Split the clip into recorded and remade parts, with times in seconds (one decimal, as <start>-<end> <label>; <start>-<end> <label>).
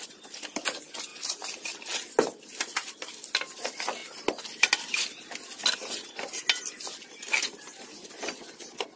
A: 0.0-9.0 recorded